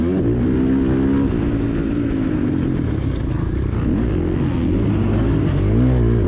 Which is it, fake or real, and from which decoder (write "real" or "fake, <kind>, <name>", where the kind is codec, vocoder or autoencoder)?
real